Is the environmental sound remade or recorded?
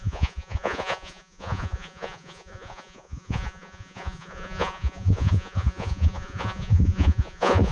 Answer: remade